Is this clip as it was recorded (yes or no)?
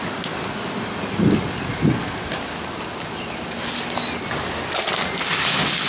yes